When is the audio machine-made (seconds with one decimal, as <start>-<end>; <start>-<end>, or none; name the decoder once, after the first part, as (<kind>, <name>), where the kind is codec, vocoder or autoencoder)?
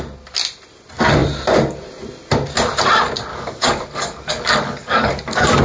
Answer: 3.3-5.6 (codec, DAC)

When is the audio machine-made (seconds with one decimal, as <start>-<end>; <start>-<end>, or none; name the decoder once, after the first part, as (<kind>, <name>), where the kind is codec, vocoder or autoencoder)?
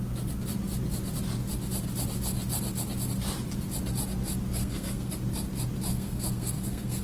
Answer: 4.6-5.1 (codec, SNAC); 5.9-7.0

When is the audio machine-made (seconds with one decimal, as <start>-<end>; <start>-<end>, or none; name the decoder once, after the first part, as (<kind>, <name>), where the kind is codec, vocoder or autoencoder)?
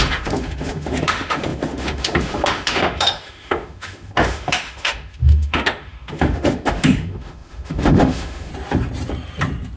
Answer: 0.0-8.5 (autoencoder, DAC-VAE)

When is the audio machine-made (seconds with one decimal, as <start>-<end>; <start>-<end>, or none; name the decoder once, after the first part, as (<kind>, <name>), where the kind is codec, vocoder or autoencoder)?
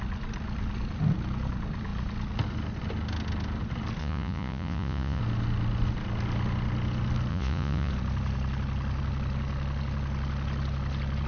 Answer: 4.0-5.2 (vocoder, Vocos); 7.3-7.9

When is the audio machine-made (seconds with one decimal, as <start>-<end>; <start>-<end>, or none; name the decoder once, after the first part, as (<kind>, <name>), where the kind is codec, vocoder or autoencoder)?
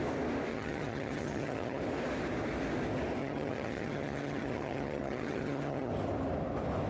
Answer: 0.5-1.8 (vocoder, HiFi-GAN); 3.2-5.9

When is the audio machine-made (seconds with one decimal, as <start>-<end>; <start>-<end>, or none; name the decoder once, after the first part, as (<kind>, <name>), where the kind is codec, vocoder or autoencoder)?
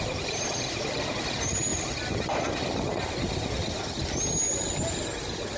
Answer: none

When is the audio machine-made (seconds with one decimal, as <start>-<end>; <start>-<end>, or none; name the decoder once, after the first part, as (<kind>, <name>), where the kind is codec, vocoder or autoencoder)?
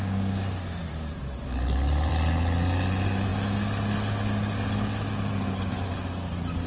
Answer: 0.8-2.1 (vocoder, BigVGAN v2)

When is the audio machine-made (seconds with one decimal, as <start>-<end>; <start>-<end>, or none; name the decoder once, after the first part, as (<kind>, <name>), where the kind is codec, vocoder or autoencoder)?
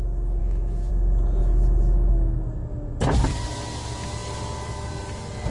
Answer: 0.4-0.9 (autoencoder, DAC-VAE)